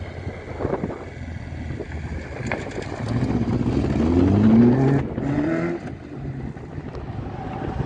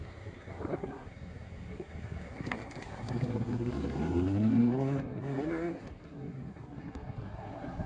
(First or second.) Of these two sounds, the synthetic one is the second